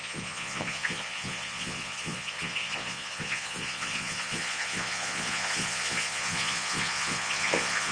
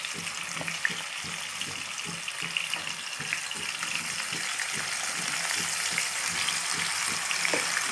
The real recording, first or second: second